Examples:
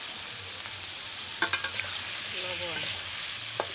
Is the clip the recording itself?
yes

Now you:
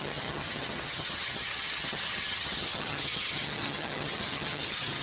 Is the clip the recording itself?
no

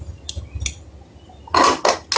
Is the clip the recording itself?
yes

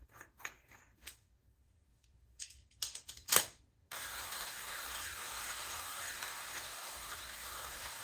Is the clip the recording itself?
no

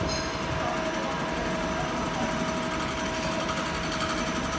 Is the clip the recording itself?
yes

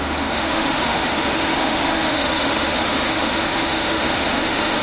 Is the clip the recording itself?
no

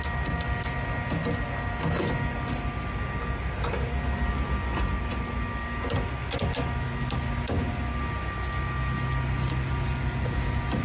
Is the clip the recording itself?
yes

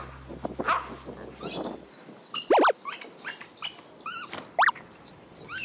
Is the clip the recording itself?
yes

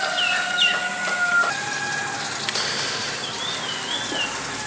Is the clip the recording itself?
yes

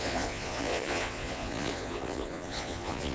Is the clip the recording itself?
no